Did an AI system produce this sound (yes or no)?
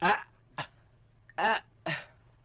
no